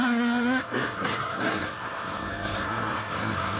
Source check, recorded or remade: remade